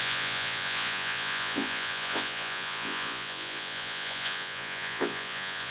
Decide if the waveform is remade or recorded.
remade